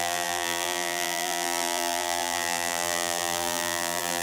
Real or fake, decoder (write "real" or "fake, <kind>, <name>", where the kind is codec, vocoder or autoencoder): fake, vocoder, BigVGAN v2